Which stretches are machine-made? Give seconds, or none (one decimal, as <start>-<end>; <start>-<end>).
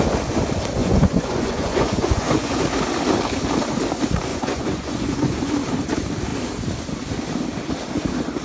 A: 0.8-2.6; 4.3-5.5